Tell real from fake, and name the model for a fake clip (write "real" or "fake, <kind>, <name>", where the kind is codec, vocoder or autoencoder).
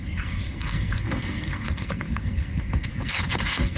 fake, codec, SNAC